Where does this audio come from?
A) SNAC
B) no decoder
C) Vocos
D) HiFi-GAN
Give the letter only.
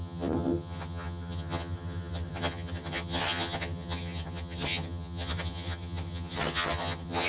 D